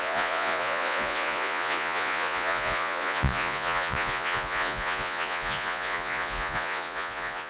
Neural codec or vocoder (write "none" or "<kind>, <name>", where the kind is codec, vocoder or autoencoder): vocoder, Vocos